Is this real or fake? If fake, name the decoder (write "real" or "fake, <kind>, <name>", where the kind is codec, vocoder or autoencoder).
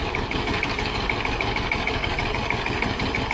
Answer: fake, codec, DAC